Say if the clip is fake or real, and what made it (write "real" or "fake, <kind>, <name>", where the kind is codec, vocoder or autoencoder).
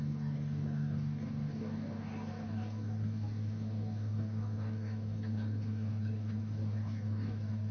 fake, codec, DAC